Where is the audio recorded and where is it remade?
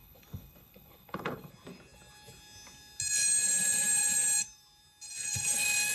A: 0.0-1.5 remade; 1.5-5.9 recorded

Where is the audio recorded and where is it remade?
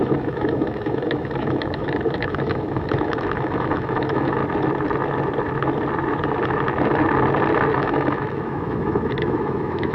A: 0.0-4.4 remade; 4.4-7.8 recorded; 7.8-9.9 remade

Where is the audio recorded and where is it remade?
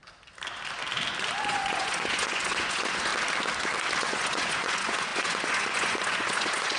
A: 0.0-1.4 recorded; 1.4-3.1 remade; 3.1-4.0 recorded; 4.0-6.8 remade